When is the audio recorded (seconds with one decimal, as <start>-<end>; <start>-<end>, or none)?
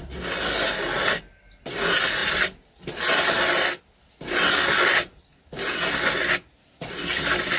0.0-7.6